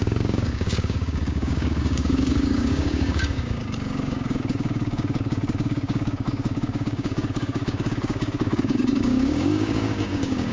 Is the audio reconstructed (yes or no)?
yes